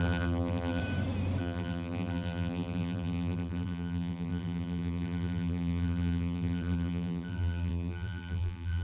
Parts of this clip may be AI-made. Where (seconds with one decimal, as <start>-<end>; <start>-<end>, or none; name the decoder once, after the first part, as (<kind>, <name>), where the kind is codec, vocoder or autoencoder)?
0.0-0.8 (vocoder, BigVGAN v2); 1.4-8.8